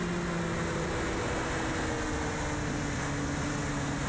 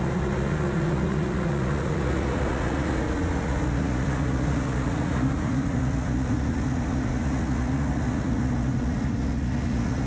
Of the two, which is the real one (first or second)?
first